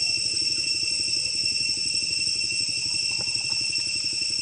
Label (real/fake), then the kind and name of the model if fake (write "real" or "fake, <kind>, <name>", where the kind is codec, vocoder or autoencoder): real